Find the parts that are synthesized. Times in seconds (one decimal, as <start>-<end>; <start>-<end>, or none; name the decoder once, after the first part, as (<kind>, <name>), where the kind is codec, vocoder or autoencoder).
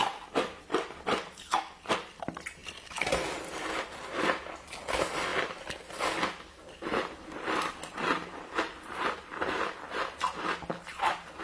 5.3-10.2 (vocoder, BigVGAN v2)